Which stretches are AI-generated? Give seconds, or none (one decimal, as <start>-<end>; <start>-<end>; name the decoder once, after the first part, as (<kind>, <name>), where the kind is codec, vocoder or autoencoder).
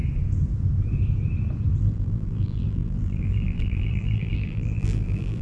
1.8-5.4 (vocoder, BigVGAN v2)